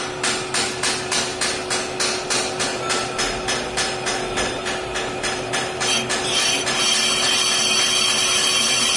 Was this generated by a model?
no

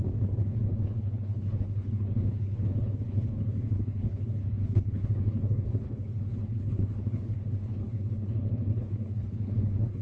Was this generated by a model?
yes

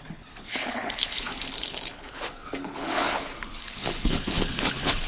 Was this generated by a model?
yes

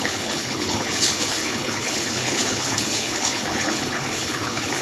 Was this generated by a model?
yes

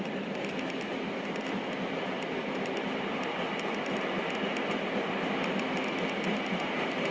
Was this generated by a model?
no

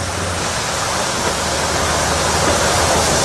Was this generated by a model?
no